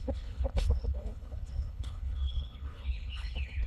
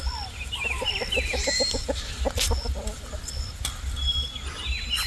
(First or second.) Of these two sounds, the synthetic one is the first